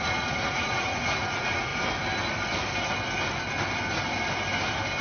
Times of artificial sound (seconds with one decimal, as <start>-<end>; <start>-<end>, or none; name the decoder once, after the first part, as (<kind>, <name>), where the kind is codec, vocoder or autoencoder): 0.0-1.7 (vocoder, Vocos)